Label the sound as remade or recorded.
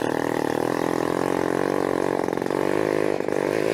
recorded